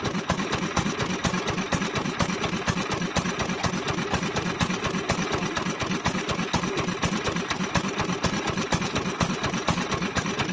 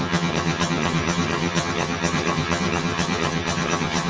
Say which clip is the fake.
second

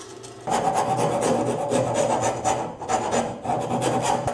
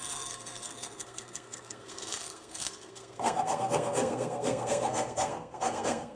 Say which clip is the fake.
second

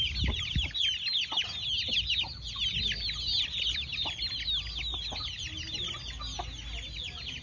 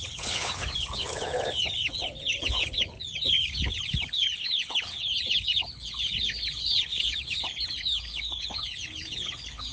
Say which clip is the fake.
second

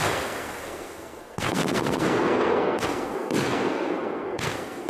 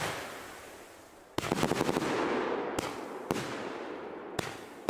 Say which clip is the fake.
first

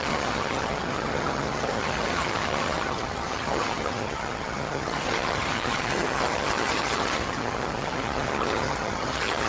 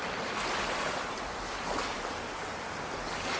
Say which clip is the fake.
first